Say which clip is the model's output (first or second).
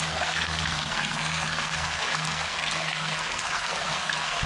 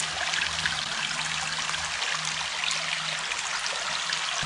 first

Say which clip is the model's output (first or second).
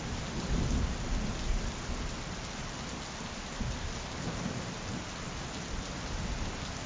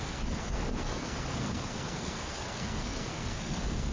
second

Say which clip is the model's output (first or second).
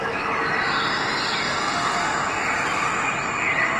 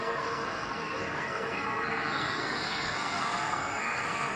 second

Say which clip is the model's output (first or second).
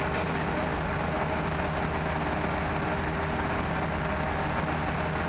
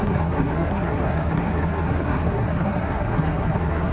second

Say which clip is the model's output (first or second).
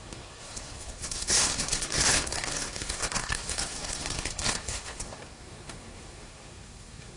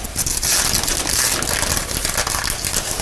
first